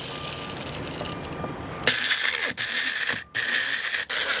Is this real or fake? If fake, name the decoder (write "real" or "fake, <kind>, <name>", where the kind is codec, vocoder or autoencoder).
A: real